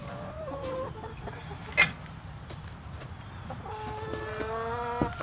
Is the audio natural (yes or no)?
yes